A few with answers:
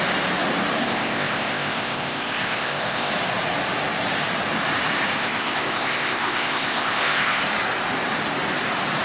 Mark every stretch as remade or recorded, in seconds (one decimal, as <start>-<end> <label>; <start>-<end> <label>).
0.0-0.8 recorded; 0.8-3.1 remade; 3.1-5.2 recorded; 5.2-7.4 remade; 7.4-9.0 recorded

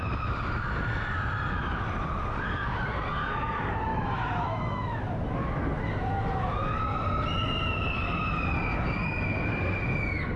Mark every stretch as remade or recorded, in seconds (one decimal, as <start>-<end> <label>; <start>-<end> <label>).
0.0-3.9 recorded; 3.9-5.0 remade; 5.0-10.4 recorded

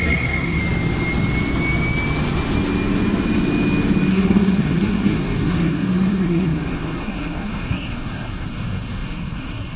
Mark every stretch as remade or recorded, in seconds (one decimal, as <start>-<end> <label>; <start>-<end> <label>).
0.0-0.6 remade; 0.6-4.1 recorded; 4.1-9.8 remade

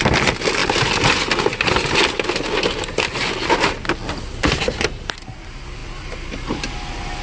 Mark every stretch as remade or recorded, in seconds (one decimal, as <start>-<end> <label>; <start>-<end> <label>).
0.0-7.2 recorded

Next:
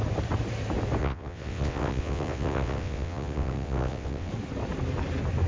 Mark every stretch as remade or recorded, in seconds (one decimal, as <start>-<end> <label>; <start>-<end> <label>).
0.0-1.0 recorded; 1.0-4.3 remade; 4.3-5.5 recorded

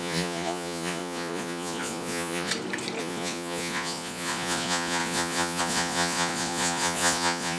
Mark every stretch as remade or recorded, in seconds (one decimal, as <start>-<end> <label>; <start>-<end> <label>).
0.0-2.5 remade; 2.5-3.0 recorded; 3.0-7.6 remade

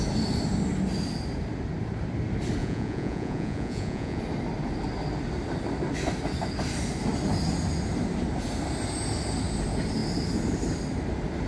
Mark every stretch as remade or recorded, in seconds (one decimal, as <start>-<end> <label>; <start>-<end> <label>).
0.0-2.6 recorded; 2.6-4.2 remade; 4.2-11.5 recorded

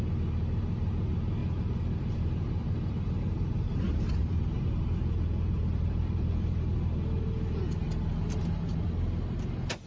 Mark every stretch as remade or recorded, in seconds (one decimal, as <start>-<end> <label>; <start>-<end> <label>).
0.0-1.4 recorded; 1.4-6.5 remade; 6.5-7.8 recorded; 7.8-8.7 remade; 8.7-9.9 recorded